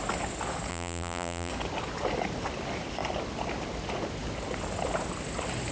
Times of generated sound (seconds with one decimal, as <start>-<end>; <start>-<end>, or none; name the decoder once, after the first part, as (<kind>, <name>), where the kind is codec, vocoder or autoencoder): 0.7-1.5 (vocoder, BigVGAN v2)